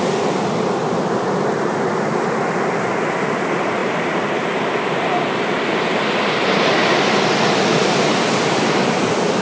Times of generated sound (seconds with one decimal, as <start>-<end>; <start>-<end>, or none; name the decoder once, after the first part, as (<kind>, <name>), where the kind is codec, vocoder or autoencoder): none